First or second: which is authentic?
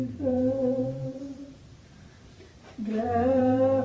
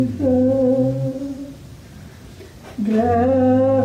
second